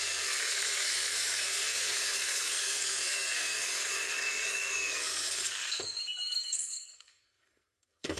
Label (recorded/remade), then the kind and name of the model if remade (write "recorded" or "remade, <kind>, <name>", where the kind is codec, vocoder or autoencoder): remade, codec, SNAC